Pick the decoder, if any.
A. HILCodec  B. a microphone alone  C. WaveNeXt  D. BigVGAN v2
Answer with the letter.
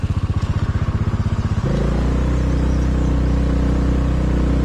B